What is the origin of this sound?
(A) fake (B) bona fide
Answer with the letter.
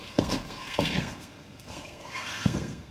A